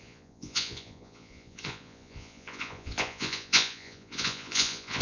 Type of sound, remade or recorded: remade